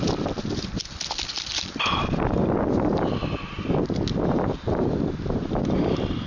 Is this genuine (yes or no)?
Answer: yes